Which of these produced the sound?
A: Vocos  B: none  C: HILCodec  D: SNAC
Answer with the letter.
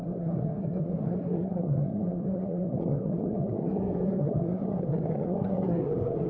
D